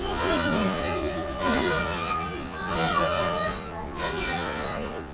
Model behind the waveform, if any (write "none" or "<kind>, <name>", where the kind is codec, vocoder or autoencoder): vocoder, Vocos